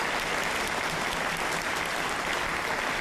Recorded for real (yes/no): yes